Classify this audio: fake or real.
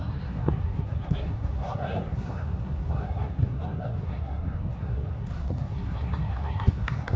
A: fake